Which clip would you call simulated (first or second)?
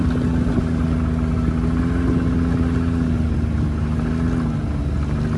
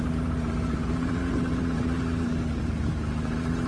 second